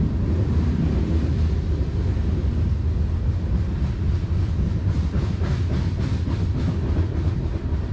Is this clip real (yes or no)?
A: yes